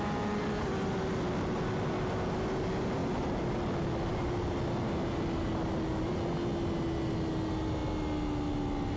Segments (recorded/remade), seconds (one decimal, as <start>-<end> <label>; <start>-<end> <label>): 0.0-9.0 recorded